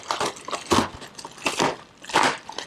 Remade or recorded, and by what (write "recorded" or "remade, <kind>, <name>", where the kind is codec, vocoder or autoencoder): recorded